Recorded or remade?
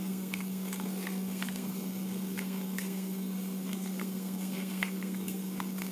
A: remade